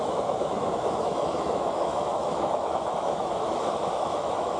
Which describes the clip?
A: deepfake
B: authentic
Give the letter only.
A